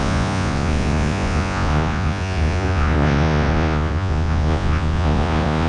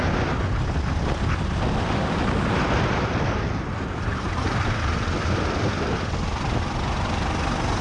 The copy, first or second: first